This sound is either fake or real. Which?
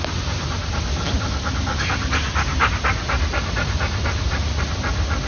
real